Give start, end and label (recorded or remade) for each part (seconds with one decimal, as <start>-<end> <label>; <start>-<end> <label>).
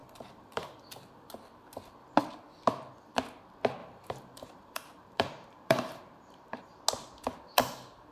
0.0-0.8 remade; 0.8-3.8 recorded; 3.8-6.6 remade; 6.6-8.1 recorded